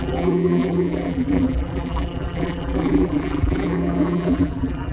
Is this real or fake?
fake